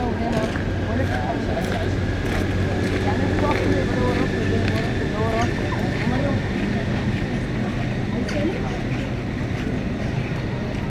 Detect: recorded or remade recorded